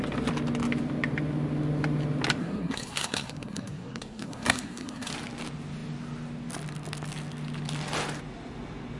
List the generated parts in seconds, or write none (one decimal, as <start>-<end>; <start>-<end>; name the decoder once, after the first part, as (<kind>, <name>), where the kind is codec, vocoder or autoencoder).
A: 2.4-5.1 (codec, SNAC)